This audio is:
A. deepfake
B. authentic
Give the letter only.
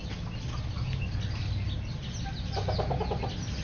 B